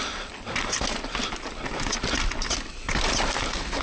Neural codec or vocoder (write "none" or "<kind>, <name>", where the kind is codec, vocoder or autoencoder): none